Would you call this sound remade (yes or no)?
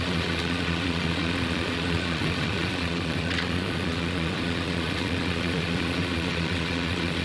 yes